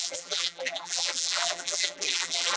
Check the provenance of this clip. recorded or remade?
remade